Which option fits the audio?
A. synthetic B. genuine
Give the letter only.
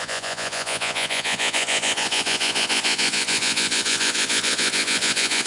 A